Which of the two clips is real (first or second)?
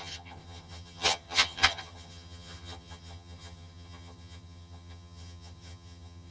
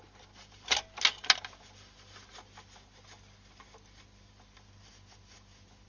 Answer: second